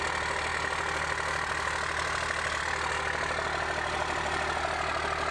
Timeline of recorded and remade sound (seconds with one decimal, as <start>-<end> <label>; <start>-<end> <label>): 0.0-5.3 recorded